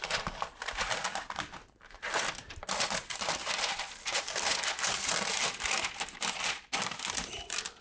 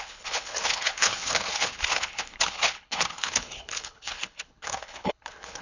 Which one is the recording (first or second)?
first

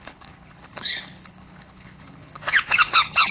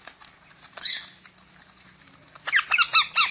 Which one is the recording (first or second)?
second